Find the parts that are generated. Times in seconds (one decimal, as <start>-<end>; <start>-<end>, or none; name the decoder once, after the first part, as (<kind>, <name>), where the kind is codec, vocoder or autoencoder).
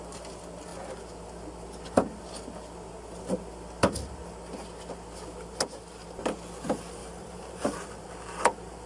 7.0-8.1 (vocoder, BigVGAN v2)